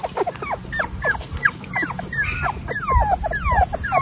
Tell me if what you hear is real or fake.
real